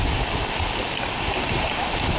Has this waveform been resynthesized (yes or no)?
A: yes